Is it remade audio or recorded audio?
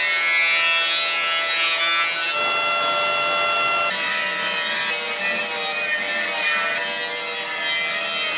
recorded